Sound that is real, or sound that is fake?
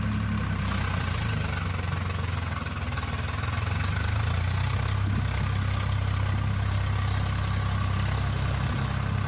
real